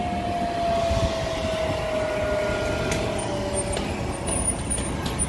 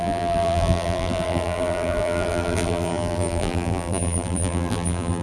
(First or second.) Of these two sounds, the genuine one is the first